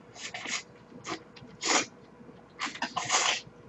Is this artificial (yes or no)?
no